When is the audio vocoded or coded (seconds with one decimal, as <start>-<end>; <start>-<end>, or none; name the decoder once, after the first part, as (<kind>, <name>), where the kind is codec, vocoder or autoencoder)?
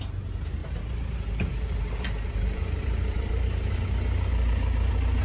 0.6-3.7 (vocoder, BigVGAN v2)